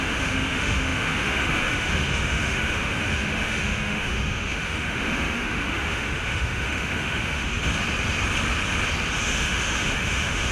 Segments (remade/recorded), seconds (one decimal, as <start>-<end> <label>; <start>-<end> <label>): 0.0-7.7 remade; 7.7-9.2 recorded; 9.2-10.5 remade